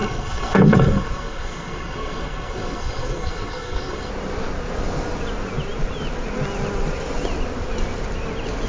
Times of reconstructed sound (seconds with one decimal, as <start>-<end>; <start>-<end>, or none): 0.0-4.1